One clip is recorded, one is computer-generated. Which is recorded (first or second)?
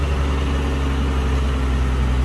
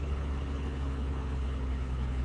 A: first